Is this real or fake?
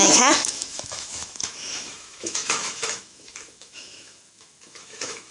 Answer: fake